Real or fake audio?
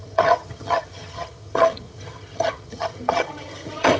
fake